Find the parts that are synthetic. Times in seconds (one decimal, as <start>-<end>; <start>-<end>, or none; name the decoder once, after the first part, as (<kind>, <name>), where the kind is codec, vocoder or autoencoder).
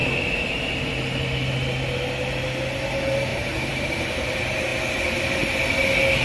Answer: 3.3-4.3 (vocoder, BigVGAN v2)